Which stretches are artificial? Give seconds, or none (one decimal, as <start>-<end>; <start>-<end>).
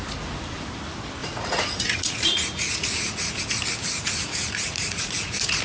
1.2-3.4; 3.8-5.6